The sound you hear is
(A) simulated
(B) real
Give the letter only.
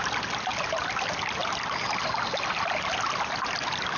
B